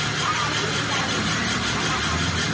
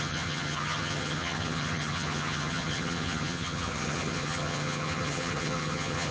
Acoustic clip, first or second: first